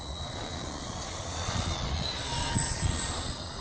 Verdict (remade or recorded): remade